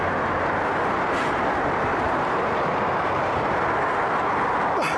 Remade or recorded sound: recorded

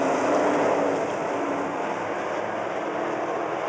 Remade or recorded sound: recorded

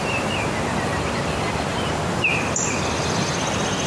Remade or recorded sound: remade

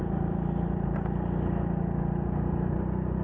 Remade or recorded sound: recorded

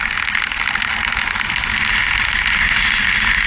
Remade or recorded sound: recorded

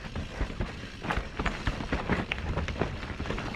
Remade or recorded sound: recorded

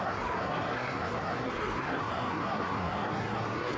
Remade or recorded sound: remade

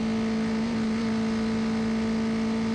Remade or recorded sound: recorded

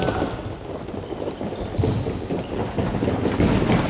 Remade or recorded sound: recorded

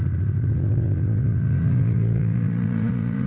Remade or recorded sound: remade